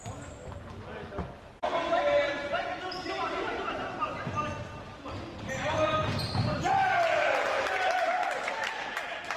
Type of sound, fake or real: real